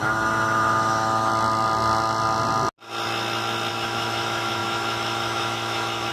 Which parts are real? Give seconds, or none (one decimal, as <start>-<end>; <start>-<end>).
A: 1.3-3.7